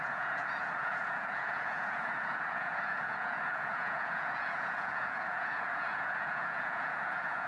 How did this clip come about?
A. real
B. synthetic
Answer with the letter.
B